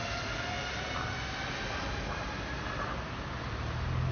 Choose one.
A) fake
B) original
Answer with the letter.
B